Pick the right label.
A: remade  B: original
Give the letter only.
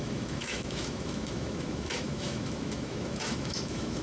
A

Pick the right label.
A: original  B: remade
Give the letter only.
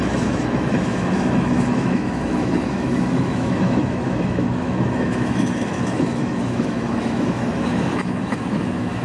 B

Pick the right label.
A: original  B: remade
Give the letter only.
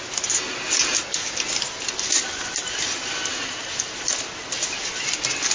A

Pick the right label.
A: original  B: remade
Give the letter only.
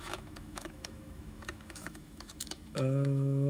B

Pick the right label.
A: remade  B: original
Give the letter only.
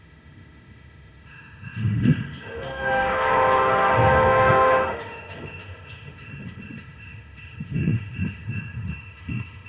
A